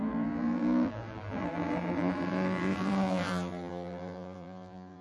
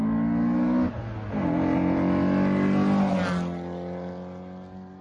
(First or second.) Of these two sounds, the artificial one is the first